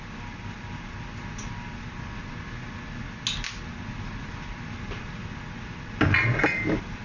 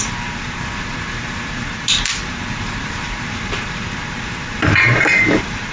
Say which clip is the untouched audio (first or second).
first